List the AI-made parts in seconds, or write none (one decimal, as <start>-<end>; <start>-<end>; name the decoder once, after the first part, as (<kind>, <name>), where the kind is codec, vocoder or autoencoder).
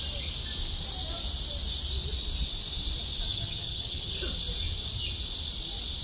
3.3-4.1 (vocoder, HiFi-GAN)